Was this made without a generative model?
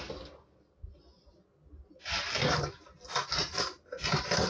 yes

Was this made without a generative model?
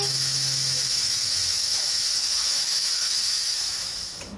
no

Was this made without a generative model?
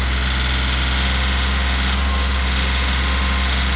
yes